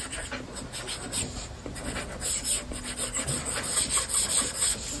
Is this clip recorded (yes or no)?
yes